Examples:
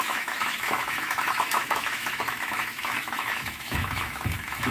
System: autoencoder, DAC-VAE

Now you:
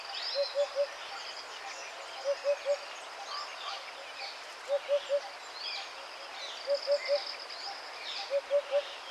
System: none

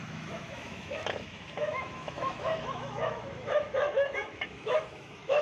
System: autoencoder, DAC-VAE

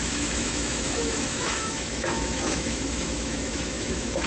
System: autoencoder, DAC-VAE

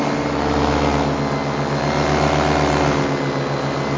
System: none